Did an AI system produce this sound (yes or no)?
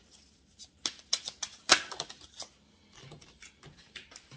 no